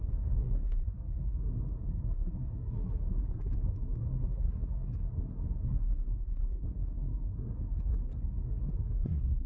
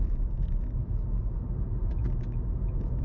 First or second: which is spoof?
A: first